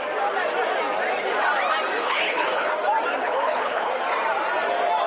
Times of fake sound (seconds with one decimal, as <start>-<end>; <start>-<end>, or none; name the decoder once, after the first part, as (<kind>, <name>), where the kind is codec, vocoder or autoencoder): 2.0-2.7 (codec, HILCodec); 3.2-3.9